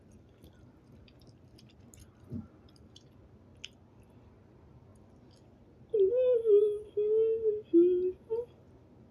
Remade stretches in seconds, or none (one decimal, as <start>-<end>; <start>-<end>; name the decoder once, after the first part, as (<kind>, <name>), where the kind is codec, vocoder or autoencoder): none